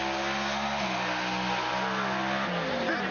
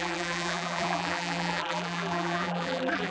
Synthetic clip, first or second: second